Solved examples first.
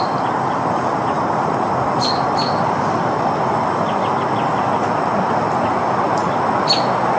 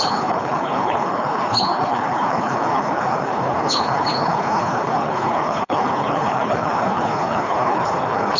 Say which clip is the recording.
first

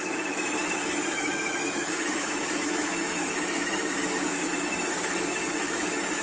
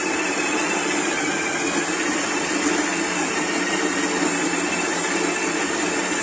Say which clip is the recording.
second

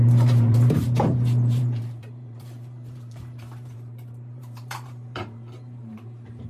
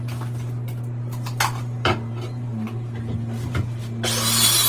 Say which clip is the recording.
second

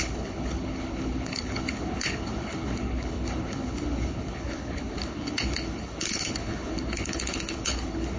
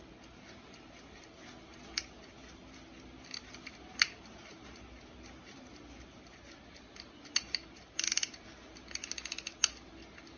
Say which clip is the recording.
second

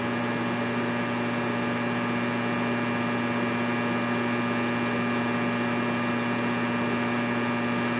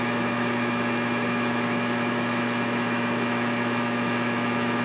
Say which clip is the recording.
first